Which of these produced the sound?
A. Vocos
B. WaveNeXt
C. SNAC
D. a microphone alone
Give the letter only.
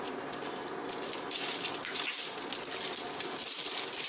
D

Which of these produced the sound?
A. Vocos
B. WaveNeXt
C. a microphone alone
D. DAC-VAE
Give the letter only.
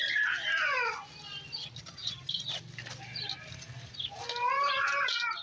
C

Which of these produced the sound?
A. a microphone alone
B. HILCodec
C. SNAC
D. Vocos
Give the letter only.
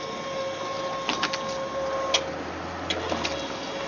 A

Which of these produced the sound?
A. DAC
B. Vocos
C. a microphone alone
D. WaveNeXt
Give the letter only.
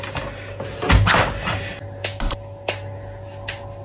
C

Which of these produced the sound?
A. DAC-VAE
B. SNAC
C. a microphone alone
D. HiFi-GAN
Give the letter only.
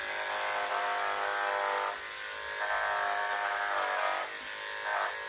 C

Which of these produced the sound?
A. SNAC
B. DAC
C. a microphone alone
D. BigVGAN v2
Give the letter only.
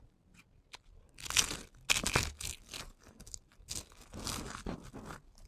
C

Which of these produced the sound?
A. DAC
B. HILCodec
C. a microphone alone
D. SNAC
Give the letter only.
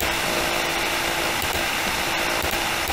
C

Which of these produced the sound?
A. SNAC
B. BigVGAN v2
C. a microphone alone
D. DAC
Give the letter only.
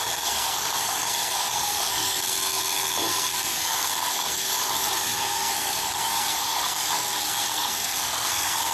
A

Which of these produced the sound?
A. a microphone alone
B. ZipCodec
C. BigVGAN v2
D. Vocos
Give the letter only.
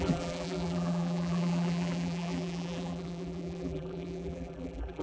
C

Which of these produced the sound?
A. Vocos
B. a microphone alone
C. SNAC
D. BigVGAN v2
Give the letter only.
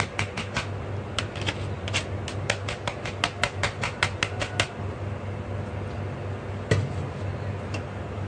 B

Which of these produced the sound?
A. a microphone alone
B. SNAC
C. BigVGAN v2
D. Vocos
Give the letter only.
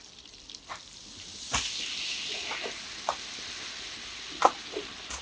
A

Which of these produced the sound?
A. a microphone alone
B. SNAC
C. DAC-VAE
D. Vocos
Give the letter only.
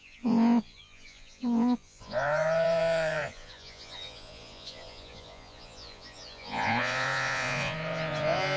D